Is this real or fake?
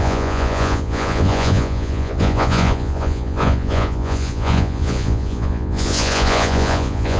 fake